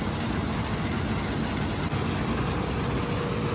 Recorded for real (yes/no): yes